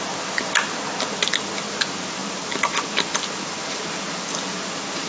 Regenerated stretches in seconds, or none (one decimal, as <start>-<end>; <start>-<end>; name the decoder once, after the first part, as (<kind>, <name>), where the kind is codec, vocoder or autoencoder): none